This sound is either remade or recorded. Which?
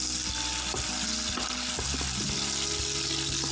recorded